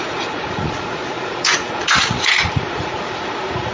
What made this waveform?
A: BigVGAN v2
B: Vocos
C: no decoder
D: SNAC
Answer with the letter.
B